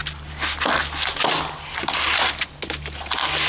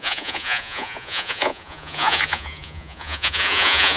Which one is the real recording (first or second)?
first